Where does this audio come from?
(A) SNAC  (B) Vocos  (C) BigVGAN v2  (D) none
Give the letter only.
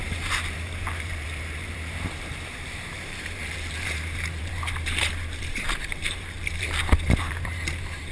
C